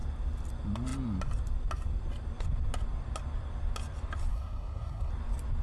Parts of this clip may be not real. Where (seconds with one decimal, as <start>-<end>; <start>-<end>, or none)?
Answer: 4.3-5.1